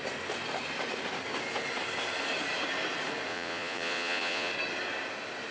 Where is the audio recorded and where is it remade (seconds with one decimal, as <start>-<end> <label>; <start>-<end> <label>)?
0.0-3.3 recorded; 3.3-4.5 remade; 4.5-5.5 recorded